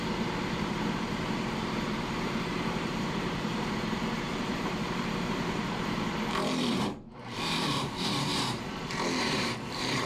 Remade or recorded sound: remade